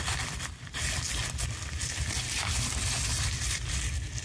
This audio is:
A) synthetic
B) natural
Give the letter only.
B